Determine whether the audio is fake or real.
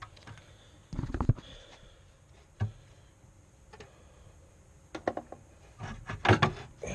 real